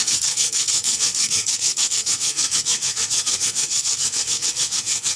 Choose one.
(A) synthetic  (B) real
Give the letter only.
A